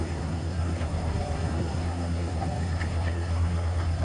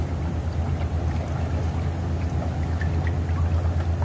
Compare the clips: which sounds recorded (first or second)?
second